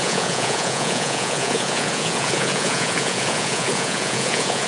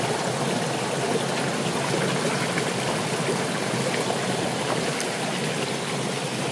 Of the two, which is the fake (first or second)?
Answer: first